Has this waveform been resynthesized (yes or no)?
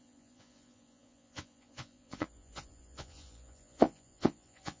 yes